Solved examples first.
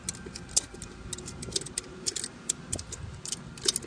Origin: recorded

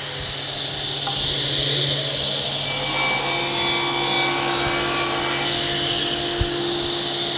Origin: recorded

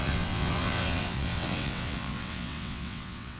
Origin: remade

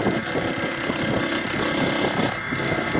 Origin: recorded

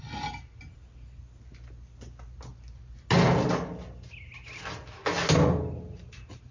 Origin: recorded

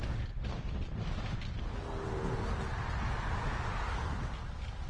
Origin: recorded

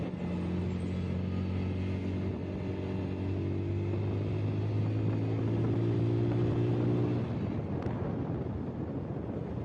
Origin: recorded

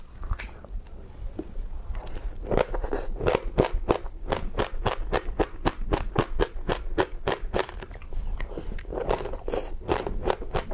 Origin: recorded